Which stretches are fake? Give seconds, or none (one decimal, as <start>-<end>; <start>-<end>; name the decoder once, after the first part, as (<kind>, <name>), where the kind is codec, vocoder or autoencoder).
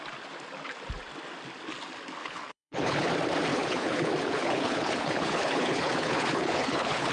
2.2-3.1 (codec, HILCodec); 3.5-7.1